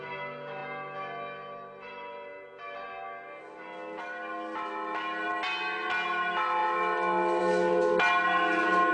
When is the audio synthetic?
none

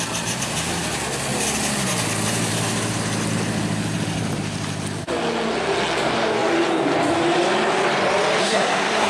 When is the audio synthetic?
8.4-9.1

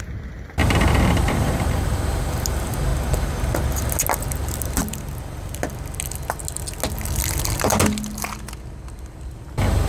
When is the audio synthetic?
0.6-1.7

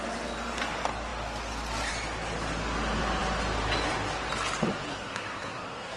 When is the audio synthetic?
4.9-6.0

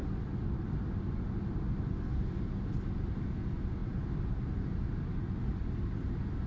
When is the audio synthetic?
none